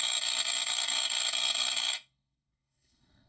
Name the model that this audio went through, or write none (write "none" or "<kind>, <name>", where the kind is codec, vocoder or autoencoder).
codec, SNAC